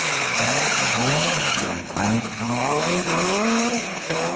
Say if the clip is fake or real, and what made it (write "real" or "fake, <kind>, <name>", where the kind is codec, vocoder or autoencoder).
fake, codec, HILCodec